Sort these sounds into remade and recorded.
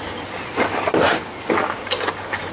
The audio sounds recorded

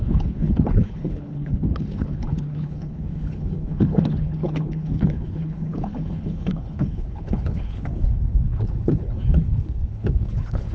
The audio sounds remade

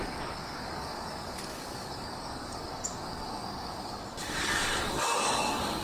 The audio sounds remade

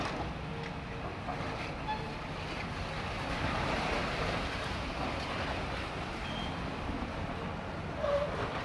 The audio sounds recorded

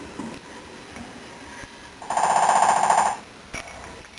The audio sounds recorded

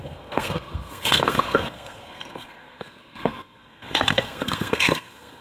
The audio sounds remade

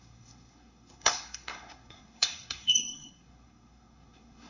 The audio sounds remade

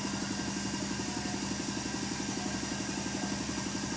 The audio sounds recorded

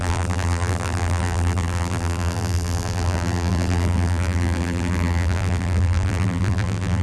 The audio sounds remade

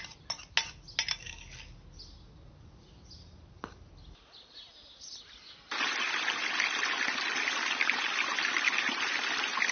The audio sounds recorded